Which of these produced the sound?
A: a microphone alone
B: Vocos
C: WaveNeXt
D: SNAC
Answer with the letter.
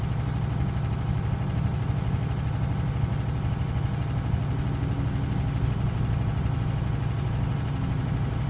A